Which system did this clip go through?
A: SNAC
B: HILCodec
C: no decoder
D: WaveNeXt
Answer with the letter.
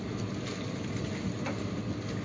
C